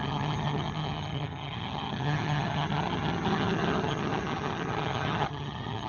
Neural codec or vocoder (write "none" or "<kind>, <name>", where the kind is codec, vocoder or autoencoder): vocoder, HiFi-GAN